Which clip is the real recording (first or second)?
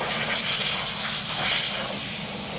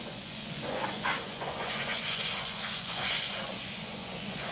first